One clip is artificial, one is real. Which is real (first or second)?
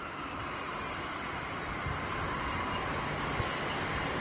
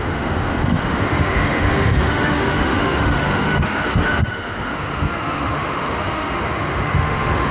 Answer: first